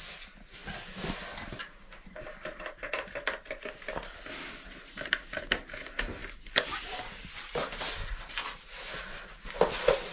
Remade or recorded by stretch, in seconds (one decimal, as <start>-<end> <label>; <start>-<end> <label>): 0.0-6.2 recorded; 6.2-7.0 remade; 7.0-10.1 recorded